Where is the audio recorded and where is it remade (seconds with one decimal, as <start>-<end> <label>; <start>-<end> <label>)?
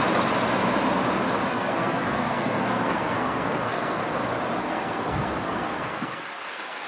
0.0-1.5 recorded; 1.5-4.0 remade; 4.0-4.6 recorded; 4.6-6.9 remade